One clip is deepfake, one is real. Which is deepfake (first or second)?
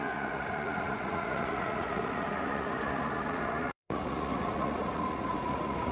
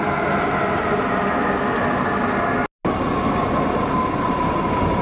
first